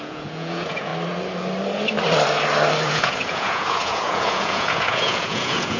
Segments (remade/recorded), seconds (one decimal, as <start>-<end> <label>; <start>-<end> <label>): 0.0-0.9 remade; 0.9-2.9 recorded; 2.9-5.8 remade

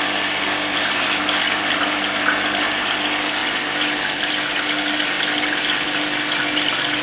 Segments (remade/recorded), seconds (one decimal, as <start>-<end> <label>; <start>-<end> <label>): 0.0-7.0 recorded

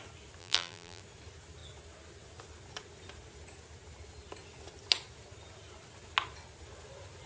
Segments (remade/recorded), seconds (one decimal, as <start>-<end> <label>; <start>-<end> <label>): 0.0-0.4 recorded; 0.4-1.0 remade; 1.0-7.3 recorded

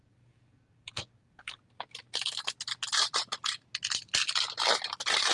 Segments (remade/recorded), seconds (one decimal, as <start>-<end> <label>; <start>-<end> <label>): 0.0-1.6 remade; 1.6-5.3 recorded

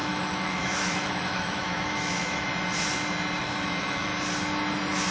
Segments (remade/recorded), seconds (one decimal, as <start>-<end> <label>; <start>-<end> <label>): 0.0-2.5 remade; 2.5-3.4 recorded; 3.4-4.1 remade; 4.1-5.1 recorded

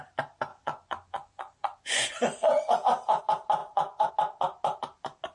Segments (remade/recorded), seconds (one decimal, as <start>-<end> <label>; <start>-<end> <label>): 0.0-0.5 recorded; 0.5-3.2 remade; 3.2-3.6 recorded; 3.6-4.1 remade; 4.1-5.3 recorded

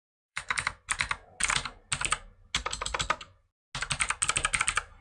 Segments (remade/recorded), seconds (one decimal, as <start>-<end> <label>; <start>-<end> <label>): 0.0-0.8 remade; 0.8-5.0 recorded

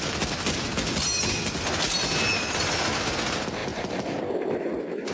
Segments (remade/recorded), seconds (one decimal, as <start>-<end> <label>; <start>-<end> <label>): 0.0-5.1 recorded